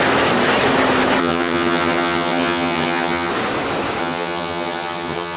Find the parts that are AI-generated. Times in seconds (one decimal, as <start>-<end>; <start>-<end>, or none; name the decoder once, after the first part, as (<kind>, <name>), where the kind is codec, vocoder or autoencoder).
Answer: 1.2-3.3 (vocoder, HiFi-GAN); 4.0-5.4